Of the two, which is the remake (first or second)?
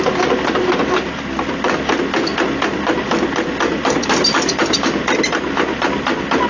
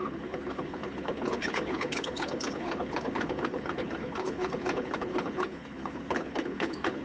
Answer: second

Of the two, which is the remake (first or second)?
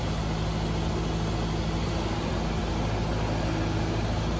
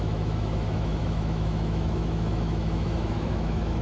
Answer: second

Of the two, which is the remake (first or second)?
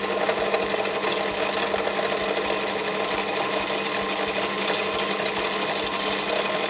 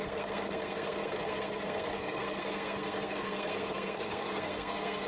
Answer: second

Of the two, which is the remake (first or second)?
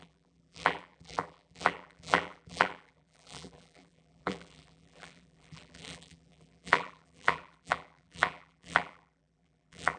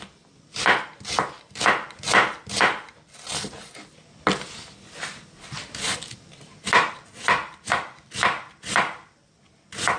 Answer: first